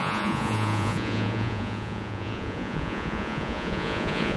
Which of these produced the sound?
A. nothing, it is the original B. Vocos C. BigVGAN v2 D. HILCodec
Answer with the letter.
B